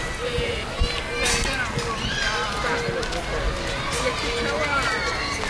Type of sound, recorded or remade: recorded